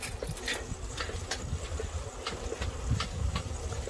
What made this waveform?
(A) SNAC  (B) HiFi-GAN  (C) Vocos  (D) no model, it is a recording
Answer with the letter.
D